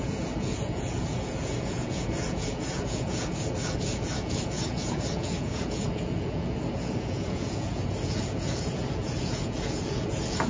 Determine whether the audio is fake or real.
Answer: fake